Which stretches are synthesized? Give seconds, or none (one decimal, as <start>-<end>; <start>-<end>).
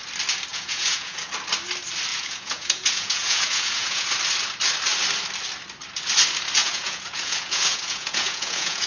0.5-1.3; 2.1-4.1; 6.6-8.9